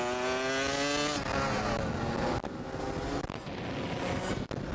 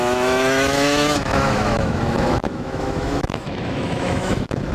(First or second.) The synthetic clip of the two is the second